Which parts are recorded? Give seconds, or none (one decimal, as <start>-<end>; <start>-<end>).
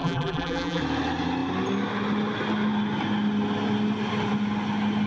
0.8-5.1